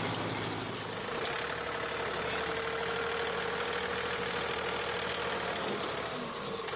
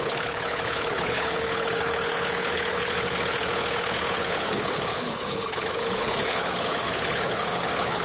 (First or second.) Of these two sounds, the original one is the first